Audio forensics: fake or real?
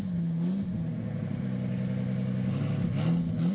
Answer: real